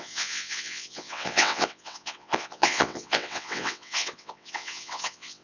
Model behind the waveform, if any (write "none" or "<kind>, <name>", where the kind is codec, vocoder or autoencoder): vocoder, WaveNeXt